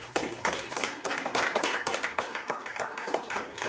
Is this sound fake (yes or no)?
yes